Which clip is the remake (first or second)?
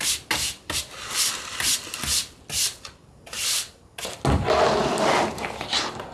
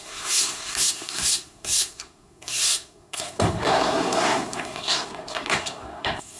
second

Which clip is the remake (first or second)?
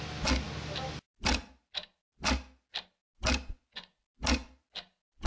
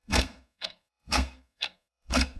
second